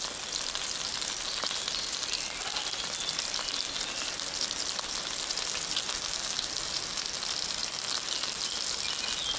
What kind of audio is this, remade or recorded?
recorded